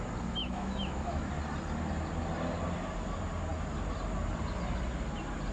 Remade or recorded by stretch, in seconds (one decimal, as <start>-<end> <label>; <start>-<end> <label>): 0.0-0.4 recorded; 0.4-1.3 remade; 1.3-5.5 recorded